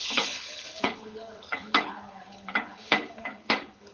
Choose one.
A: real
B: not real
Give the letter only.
B